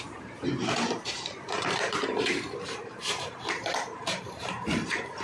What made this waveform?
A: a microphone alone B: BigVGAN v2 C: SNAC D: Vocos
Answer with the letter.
B